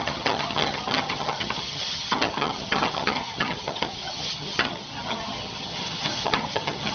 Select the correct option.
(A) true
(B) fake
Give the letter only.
B